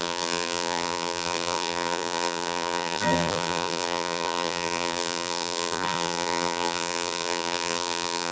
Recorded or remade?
remade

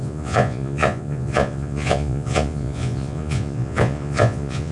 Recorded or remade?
remade